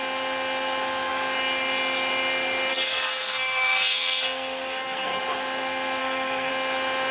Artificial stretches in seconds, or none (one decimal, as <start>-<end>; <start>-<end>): 2.7-5.2; 6.0-6.5